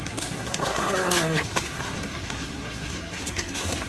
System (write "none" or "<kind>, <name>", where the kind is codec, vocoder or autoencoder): codec, SNAC